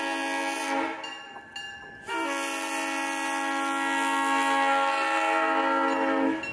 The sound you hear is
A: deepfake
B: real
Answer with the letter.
B